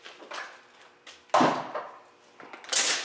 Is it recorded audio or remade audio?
recorded